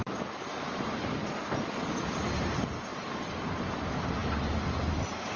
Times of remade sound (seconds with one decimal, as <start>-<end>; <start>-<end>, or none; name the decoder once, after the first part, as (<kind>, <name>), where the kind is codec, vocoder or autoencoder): 0.0-1.2 (vocoder, BigVGAN v2); 2.1-5.4